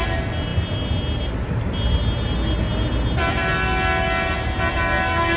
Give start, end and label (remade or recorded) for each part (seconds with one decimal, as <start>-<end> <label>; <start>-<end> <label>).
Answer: 0.0-5.4 recorded